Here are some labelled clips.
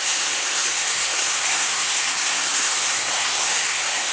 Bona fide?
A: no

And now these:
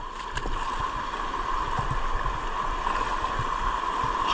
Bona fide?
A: yes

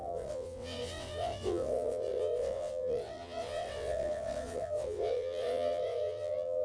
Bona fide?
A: no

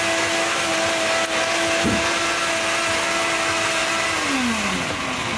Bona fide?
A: yes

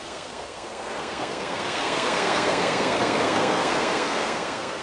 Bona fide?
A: no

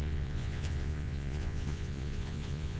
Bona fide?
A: no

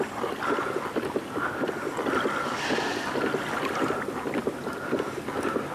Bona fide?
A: yes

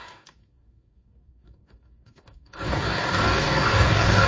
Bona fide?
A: no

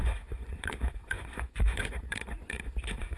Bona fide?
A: no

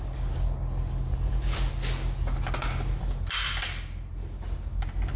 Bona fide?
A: yes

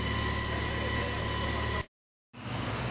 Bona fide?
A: yes